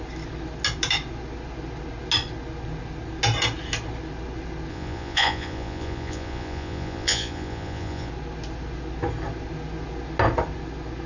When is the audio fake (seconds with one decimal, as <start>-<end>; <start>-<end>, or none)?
4.7-8.1